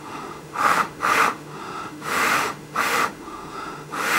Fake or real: fake